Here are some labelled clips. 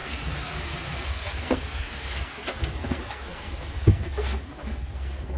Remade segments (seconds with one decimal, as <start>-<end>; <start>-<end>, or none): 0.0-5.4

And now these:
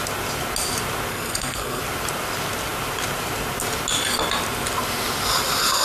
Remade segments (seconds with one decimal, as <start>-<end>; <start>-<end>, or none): 1.1-1.8

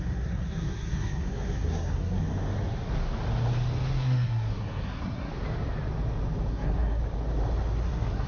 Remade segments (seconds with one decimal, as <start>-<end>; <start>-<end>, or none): 0.0-2.2; 3.9-5.3; 6.5-7.0; 7.8-8.3